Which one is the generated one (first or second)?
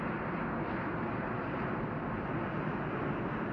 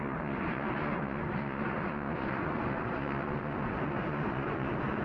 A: second